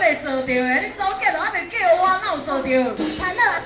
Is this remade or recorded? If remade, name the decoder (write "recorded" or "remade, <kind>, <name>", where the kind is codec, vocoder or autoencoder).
recorded